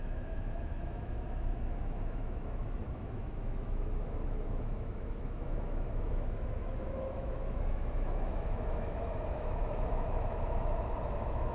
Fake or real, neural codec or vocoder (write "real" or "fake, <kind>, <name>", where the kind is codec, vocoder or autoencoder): fake, autoencoder, DAC-VAE